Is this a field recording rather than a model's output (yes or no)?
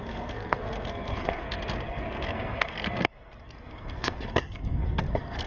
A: no